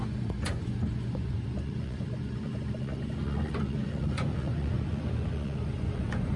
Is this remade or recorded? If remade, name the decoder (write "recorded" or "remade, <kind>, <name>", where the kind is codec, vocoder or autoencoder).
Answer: remade, vocoder, Vocos